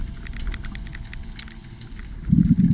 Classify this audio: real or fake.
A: real